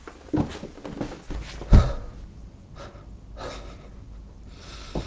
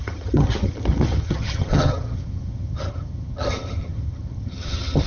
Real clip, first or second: first